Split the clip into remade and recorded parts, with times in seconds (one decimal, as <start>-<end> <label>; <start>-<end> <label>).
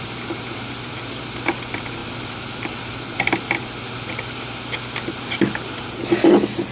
0.0-6.7 recorded